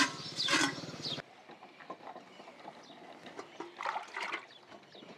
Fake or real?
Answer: real